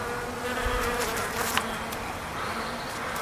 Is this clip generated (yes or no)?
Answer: no